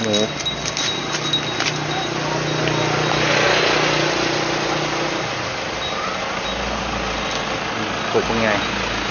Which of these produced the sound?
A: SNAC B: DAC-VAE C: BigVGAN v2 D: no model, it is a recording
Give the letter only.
D